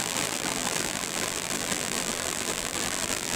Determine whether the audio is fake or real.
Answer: fake